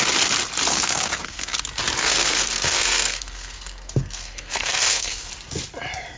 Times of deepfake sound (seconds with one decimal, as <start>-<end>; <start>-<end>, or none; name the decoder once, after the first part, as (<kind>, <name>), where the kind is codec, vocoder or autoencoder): 0.7-1.6 (codec, SNAC); 2.0-5.3